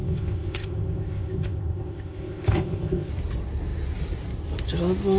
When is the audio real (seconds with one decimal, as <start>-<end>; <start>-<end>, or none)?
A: 3.1-5.2

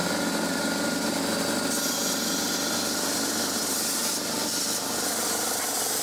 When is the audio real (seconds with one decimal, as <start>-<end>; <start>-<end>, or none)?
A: 0.0-6.0